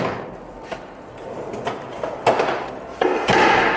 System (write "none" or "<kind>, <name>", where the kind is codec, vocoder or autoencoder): none